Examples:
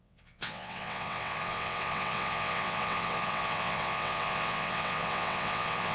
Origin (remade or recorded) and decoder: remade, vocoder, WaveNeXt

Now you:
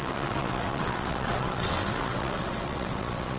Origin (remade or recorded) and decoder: remade, vocoder, WaveNeXt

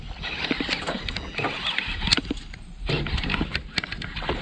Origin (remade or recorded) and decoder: recorded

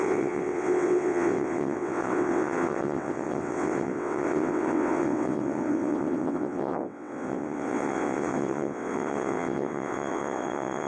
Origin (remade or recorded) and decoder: remade, vocoder, WaveNeXt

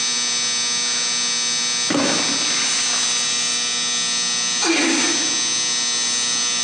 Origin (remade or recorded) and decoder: recorded